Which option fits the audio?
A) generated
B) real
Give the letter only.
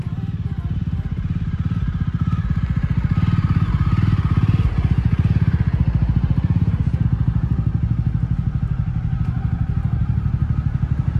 B